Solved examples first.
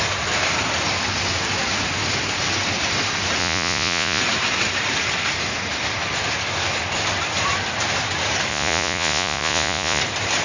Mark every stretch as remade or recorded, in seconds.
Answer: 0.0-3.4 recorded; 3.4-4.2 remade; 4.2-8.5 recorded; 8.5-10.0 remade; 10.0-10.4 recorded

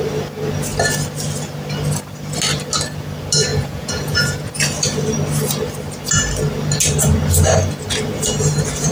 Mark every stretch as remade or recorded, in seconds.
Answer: 0.0-3.5 recorded; 3.5-4.5 remade; 4.5-8.9 recorded

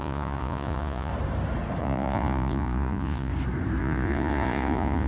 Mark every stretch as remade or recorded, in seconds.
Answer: 0.0-1.1 remade; 1.1-1.8 recorded; 1.8-3.3 remade; 3.3-3.8 recorded; 3.8-5.1 remade

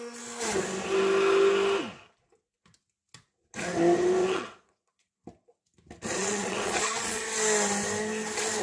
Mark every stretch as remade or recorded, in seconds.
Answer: 0.0-4.2 recorded; 4.2-5.1 remade; 5.1-6.1 recorded; 6.1-7.2 remade; 7.2-8.6 recorded

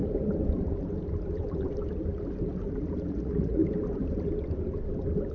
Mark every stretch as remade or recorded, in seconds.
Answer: 0.0-3.1 recorded; 3.1-3.6 remade; 3.6-5.3 recorded